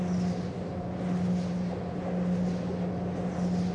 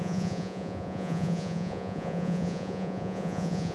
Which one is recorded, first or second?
first